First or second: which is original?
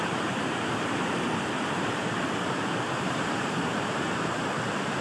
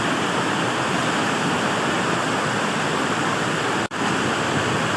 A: second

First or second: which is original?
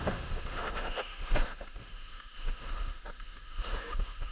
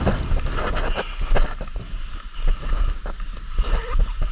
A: second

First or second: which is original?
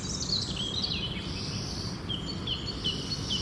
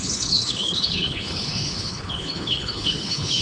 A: first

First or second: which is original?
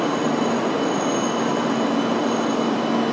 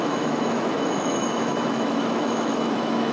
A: first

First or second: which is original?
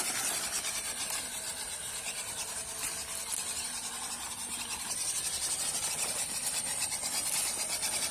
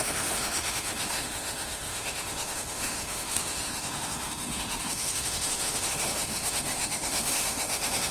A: first